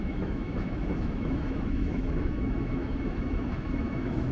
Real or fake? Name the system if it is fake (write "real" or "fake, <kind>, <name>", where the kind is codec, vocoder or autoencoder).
fake, autoencoder, DAC-VAE